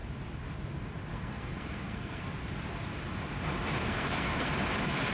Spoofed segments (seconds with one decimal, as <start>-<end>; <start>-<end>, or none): 1.1-2.3; 3.8-4.5